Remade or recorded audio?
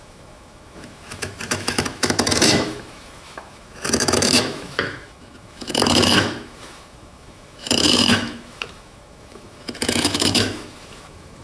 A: remade